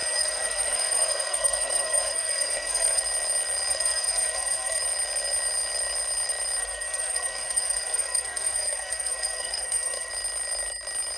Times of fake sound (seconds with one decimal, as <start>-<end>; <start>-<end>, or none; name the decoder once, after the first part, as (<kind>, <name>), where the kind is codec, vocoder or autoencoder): 0.0-3.0 (codec, SNAC); 3.7-4.8; 6.6-10.1